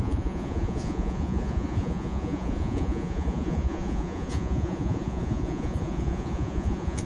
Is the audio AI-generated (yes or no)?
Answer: yes